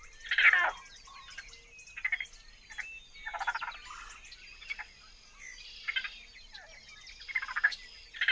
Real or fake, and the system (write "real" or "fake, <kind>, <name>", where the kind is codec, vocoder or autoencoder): real